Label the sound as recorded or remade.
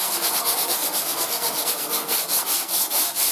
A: remade